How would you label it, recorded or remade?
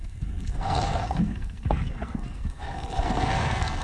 remade